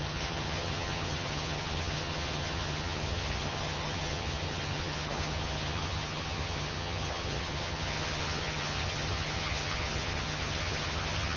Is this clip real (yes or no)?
no